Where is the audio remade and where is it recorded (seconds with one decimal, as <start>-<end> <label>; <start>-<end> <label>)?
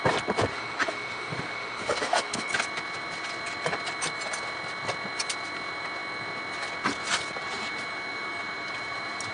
0.0-0.5 recorded; 0.5-2.5 remade; 2.5-9.3 recorded